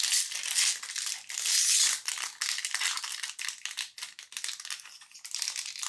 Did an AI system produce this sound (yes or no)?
no